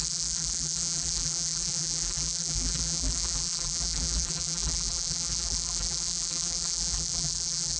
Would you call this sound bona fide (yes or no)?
no